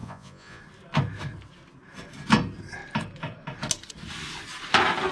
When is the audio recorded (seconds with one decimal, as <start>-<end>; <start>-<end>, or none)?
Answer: 0.6-5.1